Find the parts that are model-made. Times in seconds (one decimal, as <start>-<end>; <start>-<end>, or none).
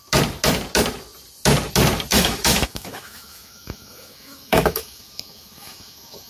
2.1-6.3